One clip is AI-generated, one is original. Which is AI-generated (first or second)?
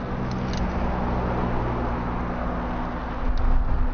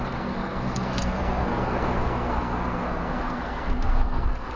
second